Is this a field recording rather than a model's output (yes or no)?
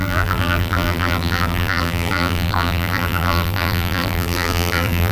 no